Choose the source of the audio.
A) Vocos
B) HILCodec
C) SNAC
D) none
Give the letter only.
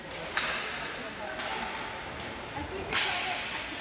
D